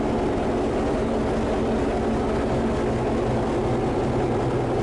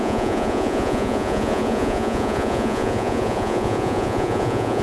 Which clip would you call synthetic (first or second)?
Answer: second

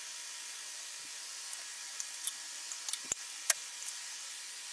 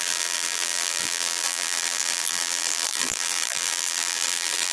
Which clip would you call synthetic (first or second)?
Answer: second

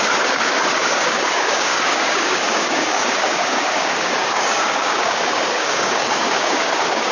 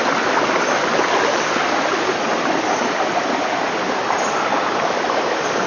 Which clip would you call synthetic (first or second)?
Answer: first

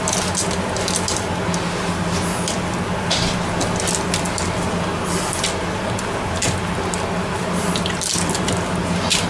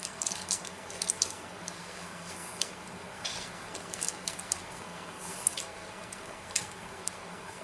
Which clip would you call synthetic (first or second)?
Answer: second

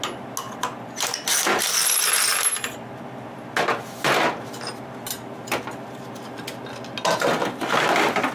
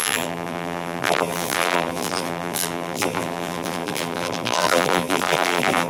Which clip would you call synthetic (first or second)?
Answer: second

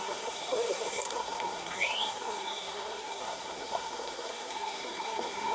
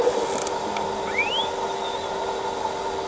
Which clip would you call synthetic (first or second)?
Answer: first